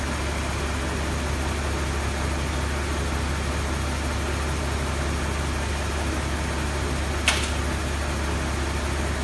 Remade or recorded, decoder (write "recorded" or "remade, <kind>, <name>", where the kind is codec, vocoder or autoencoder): recorded